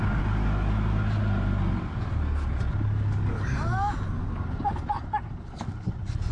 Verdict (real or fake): real